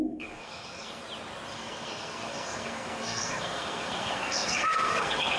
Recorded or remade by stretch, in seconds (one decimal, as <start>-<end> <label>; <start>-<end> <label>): 0.0-1.0 remade; 1.0-1.5 recorded; 1.5-5.4 remade